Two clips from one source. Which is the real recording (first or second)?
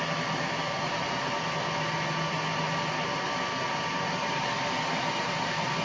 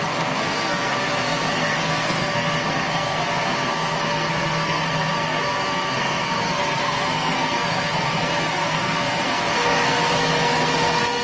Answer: first